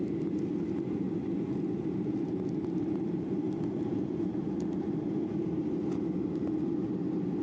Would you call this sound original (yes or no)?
yes